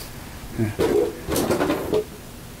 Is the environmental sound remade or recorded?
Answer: recorded